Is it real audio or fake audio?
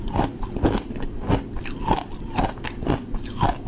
real